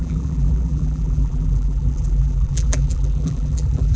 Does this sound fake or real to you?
fake